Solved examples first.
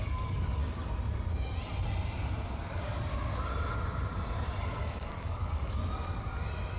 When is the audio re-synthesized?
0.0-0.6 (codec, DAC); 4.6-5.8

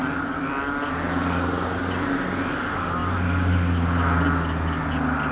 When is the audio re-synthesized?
none

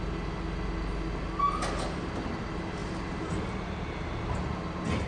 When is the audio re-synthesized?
none